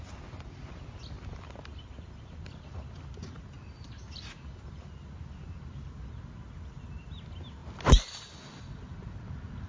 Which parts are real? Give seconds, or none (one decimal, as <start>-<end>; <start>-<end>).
0.0-9.7